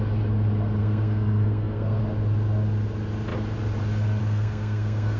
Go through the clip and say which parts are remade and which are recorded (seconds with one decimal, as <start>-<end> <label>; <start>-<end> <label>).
0.0-0.8 recorded; 0.8-2.0 remade; 2.0-4.2 recorded; 4.2-5.2 remade